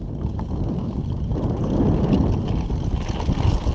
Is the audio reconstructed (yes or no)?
no